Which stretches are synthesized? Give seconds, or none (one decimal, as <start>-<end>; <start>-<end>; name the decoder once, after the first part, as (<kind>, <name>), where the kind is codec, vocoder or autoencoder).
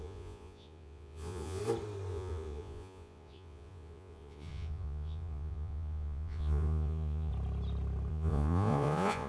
0.0-1.6 (vocoder, Vocos); 2.1-7.3; 8.1-9.3